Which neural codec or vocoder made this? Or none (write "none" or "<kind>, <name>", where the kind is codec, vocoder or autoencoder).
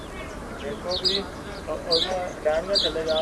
none